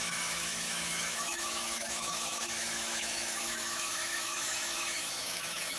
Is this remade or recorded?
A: remade